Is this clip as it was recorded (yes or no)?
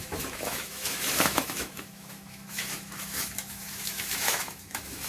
no